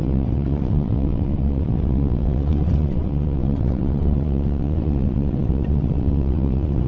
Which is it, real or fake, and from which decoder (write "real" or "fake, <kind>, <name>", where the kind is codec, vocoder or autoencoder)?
fake, vocoder, WaveNeXt